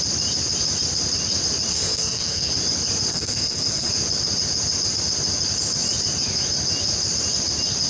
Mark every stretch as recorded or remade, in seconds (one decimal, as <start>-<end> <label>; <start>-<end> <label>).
0.0-1.7 recorded; 1.7-2.5 remade; 2.5-3.1 recorded; 3.1-3.9 remade; 3.9-7.9 recorded